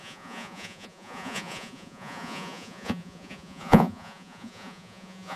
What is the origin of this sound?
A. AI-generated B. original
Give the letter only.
A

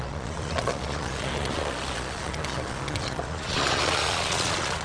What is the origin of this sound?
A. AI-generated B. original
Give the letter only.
A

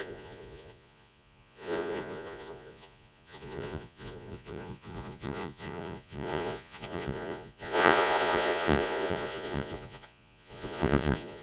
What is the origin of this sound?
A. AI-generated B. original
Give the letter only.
A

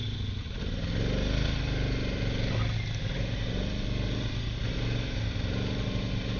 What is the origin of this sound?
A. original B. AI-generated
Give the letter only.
A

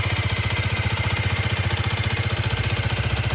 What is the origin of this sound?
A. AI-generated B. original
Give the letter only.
B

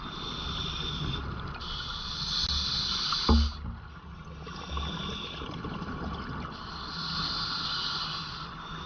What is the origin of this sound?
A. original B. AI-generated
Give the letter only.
A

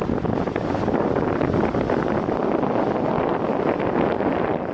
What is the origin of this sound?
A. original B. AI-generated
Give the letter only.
A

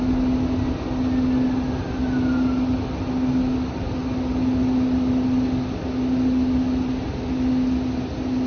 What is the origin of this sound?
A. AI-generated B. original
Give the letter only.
B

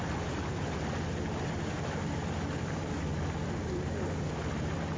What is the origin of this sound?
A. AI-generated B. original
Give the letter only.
B